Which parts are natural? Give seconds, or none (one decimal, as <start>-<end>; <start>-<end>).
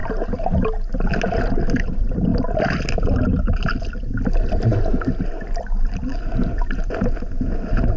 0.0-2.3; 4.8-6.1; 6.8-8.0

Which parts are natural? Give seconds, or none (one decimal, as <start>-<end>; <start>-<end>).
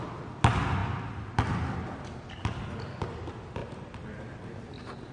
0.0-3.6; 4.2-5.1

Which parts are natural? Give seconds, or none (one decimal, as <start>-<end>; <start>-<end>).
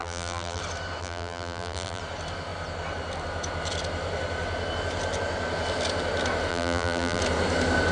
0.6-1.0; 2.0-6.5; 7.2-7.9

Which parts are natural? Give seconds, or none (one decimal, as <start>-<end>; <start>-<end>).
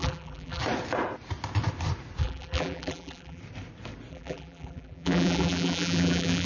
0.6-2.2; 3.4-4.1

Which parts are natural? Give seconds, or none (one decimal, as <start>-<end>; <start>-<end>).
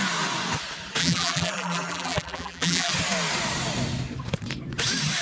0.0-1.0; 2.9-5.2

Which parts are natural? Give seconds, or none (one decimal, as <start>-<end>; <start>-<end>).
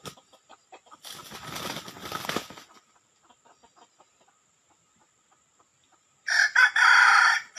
0.0-7.6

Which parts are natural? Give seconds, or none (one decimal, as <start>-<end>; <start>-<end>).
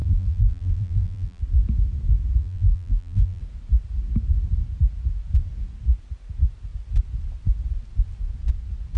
1.4-2.4; 3.4-9.0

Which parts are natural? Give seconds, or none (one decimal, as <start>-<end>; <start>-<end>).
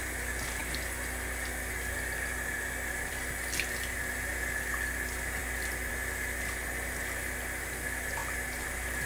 0.0-9.1